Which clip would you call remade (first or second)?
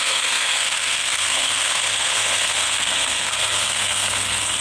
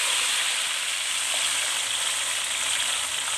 first